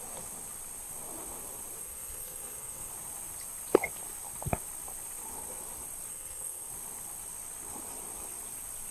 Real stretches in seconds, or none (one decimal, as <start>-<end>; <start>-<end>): 0.0-1.8; 2.9-6.1; 6.7-8.9